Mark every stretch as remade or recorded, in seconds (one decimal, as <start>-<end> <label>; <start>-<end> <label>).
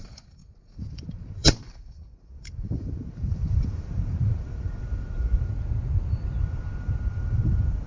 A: 0.0-0.4 remade; 0.4-0.9 recorded; 0.9-5.5 remade; 5.5-6.4 recorded; 6.4-7.9 remade